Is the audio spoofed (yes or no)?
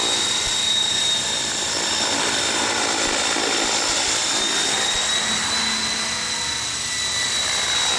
no